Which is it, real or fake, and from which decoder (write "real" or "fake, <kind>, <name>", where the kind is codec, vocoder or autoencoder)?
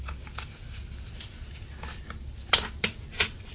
real